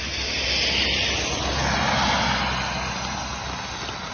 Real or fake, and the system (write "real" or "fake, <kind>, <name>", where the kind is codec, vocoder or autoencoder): real